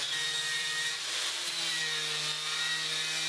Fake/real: fake